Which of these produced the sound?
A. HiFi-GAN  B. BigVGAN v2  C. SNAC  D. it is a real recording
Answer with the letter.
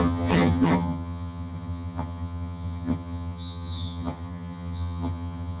A